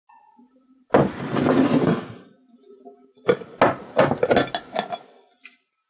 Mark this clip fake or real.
real